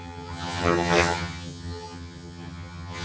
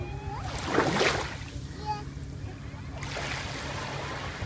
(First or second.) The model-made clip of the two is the first